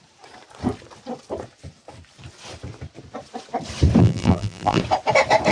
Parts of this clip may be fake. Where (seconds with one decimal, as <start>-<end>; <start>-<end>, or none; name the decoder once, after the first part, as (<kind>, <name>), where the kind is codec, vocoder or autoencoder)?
4.0-4.8 (vocoder, BigVGAN v2)